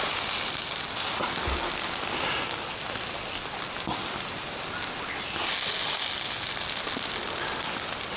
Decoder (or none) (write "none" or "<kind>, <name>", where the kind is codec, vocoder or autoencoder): none